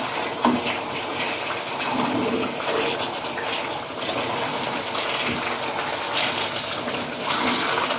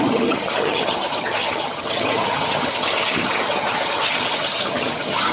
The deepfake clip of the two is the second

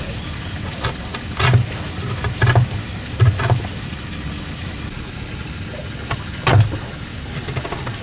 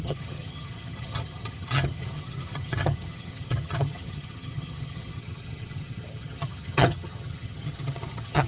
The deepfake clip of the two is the second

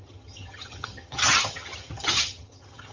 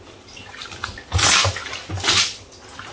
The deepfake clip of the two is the first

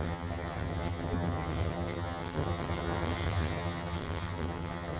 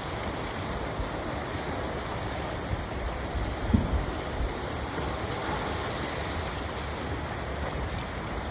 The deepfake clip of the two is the first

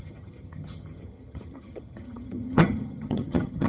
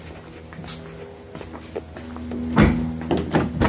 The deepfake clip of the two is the first